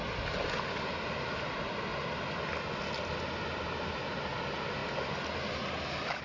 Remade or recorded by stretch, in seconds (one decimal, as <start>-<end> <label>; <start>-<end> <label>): 0.0-6.2 recorded